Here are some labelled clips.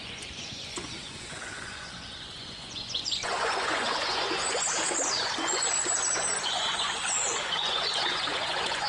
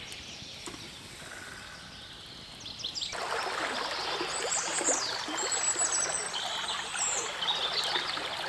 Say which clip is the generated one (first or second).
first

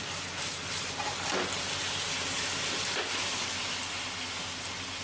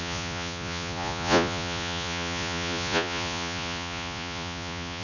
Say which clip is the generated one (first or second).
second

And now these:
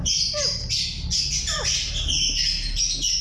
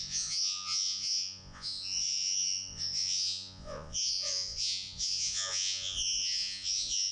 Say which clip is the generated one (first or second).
second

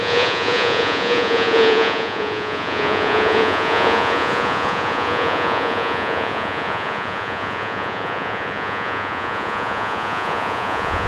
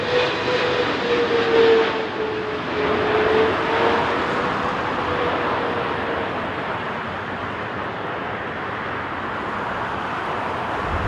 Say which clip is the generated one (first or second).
first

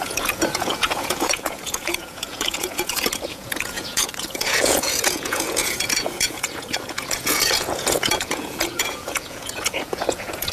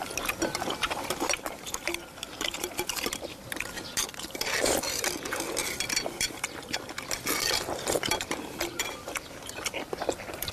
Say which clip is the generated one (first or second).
first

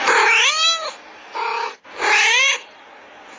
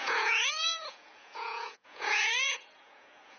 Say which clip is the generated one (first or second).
second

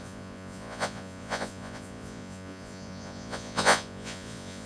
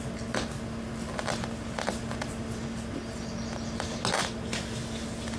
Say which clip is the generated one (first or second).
first